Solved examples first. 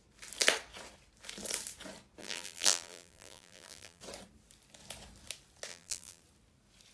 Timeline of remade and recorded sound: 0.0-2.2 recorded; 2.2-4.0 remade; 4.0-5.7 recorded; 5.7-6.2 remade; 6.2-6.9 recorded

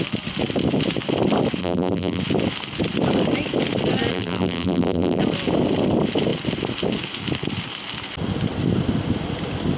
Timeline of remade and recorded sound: 0.0-1.6 recorded; 1.6-2.2 remade; 2.2-4.1 recorded; 4.1-5.2 remade; 5.2-9.8 recorded

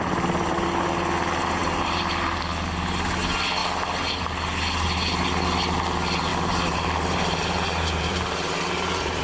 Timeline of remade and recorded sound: 0.0-1.6 recorded; 1.6-2.4 remade; 2.4-6.3 recorded; 6.3-9.2 remade

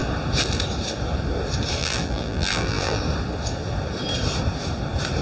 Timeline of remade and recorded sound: 0.0-1.8 recorded; 1.8-3.0 remade; 3.0-5.2 recorded